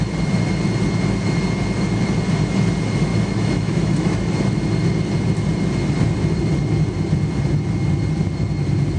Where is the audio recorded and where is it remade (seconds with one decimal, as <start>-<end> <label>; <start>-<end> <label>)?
0.0-3.1 recorded; 3.1-4.2 remade; 4.2-9.0 recorded